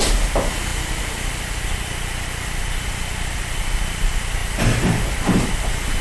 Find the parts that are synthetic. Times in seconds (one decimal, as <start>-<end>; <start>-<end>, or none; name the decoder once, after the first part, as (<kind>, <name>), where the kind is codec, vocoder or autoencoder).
0.7-3.5 (vocoder, BigVGAN v2); 4.4-5.5